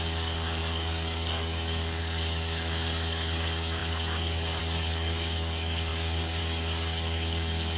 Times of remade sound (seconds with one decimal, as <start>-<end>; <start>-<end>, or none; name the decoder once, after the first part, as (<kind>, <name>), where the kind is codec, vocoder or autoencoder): 0.0-7.8 (codec, DAC)